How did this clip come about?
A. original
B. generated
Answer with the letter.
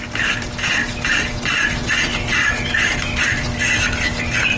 A